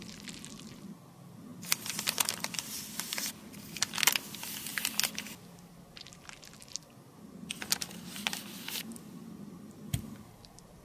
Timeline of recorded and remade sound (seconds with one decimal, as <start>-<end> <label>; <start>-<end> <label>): 0.0-1.5 recorded; 1.5-3.3 remade; 3.3-10.8 recorded